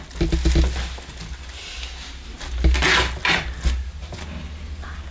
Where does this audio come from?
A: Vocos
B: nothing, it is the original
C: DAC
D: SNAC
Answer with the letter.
B